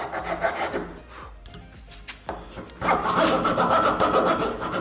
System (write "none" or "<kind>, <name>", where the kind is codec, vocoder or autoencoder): none